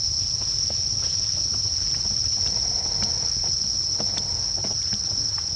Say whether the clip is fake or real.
real